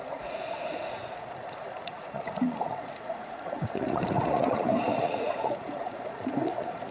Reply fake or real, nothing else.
fake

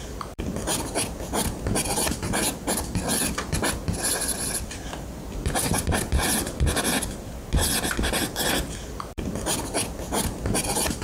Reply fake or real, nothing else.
real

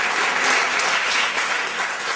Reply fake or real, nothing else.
real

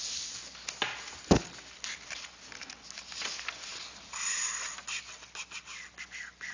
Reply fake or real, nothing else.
real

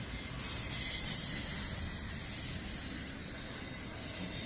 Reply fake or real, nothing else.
real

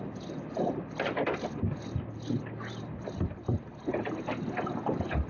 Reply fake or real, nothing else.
real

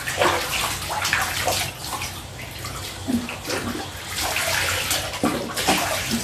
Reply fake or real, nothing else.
real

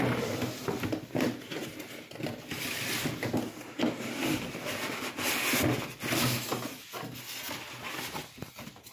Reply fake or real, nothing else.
real